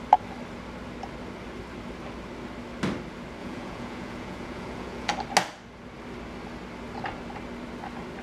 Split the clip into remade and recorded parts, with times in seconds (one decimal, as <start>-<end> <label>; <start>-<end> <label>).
0.0-3.4 recorded; 3.4-5.1 remade; 5.1-8.2 recorded